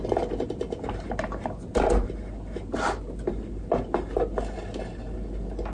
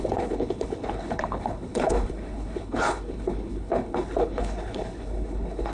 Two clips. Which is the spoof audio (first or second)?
second